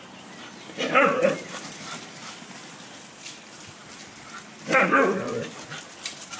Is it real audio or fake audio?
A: real